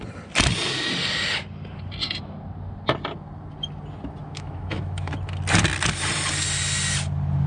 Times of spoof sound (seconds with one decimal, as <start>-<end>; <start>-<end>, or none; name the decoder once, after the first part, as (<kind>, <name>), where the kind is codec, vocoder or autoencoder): 4.2-5.1 (autoencoder, DAC-VAE)